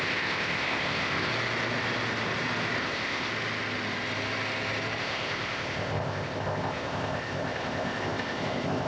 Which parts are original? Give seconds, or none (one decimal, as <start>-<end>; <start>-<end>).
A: 1.3-2.8; 3.3-5.0